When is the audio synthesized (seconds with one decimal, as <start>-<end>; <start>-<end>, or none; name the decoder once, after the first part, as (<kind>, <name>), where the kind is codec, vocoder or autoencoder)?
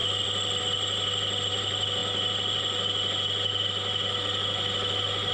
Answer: 0.0-0.6 (vocoder, BigVGAN v2)